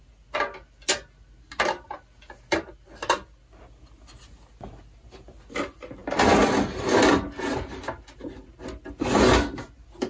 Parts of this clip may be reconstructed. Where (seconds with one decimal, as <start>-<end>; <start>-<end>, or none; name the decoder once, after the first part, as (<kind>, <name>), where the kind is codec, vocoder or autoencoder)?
none

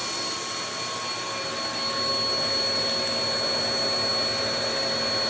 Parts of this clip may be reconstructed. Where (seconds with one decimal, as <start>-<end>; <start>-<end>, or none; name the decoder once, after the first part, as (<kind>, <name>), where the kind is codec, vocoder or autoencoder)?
none